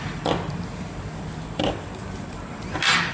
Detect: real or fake real